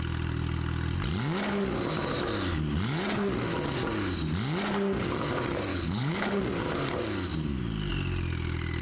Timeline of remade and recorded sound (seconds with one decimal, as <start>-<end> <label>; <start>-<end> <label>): 0.0-5.7 recorded; 5.7-6.4 remade; 6.4-8.8 recorded